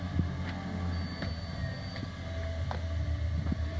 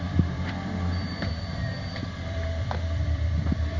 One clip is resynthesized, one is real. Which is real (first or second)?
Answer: first